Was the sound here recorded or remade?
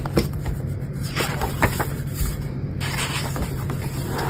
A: remade